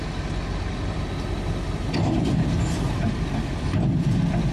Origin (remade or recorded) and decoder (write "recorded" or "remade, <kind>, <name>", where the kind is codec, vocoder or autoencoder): recorded